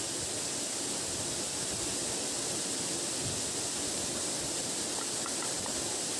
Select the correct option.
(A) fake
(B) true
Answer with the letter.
B